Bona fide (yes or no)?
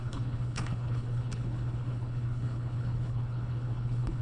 no